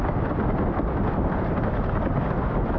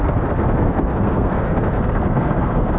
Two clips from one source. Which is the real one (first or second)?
first